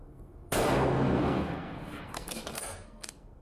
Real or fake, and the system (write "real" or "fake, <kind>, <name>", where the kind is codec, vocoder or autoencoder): fake, codec, SNAC